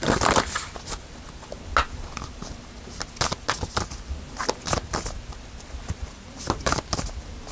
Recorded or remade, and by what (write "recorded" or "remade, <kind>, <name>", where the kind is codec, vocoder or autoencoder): recorded